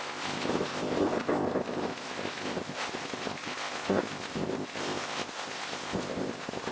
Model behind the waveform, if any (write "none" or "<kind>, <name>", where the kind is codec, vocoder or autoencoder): codec, ZipCodec